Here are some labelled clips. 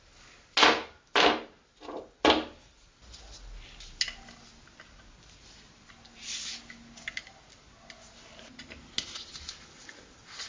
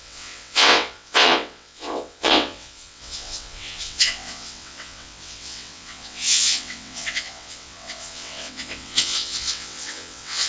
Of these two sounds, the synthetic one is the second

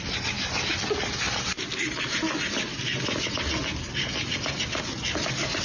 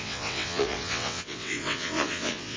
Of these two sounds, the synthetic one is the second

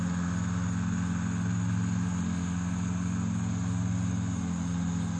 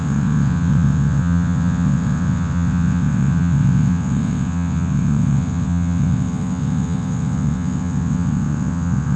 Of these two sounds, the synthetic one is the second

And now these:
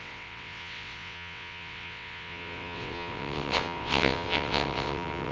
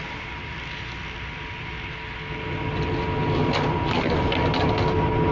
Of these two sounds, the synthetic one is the first